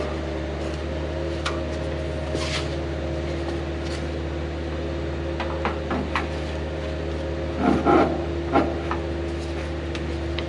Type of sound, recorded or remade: recorded